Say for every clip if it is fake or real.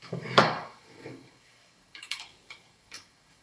fake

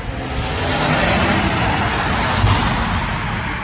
real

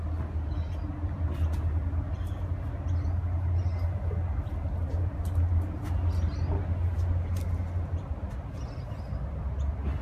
real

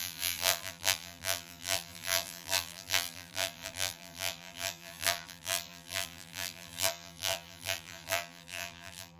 fake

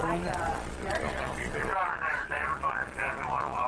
fake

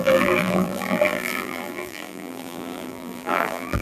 fake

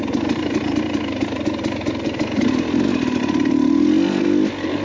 real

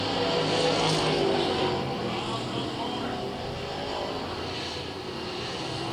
real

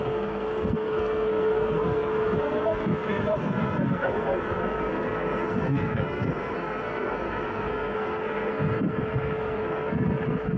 fake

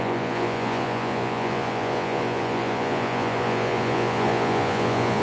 fake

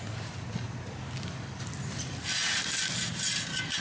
real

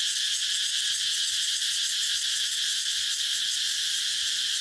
real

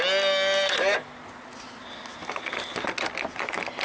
real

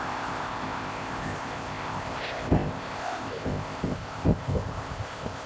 fake